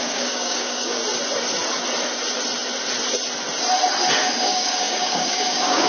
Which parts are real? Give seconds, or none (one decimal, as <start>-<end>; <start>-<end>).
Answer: 1.0-4.4